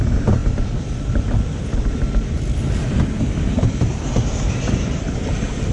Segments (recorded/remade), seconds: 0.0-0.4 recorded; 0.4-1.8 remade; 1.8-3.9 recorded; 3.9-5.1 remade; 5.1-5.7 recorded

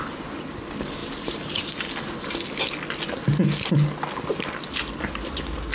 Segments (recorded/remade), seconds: 0.0-1.0 recorded; 1.0-1.8 remade; 1.8-5.7 recorded

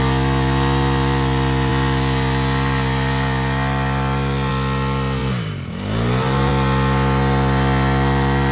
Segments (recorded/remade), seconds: 0.0-5.2 recorded; 5.2-6.5 remade; 6.5-8.5 recorded

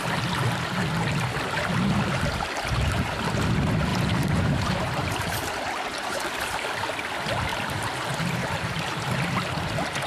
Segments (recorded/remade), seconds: 0.0-3.9 recorded; 3.9-5.5 remade; 5.5-7.5 recorded; 7.5-9.1 remade; 9.1-10.1 recorded

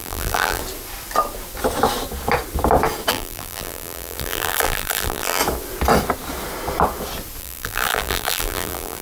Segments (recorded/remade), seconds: 0.0-0.6 remade; 0.6-3.1 recorded; 3.1-5.4 remade; 5.4-7.4 recorded; 7.4-9.0 remade

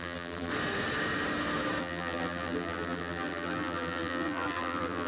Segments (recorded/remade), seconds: 0.0-0.5 remade; 0.5-1.8 recorded; 1.8-5.1 remade